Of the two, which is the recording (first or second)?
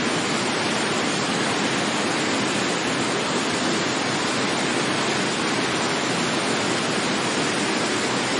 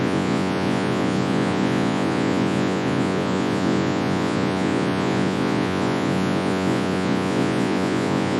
first